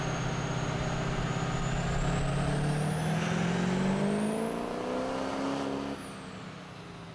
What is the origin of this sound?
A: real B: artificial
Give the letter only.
A